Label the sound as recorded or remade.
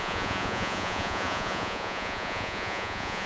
remade